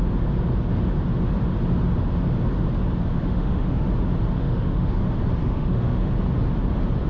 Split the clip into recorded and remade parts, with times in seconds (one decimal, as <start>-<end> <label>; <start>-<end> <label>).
0.0-3.1 recorded; 3.1-3.9 remade; 3.9-4.4 recorded; 4.4-5.0 remade; 5.0-5.4 recorded; 5.4-6.1 remade; 6.1-7.1 recorded